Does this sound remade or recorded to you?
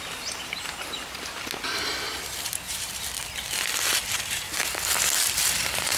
recorded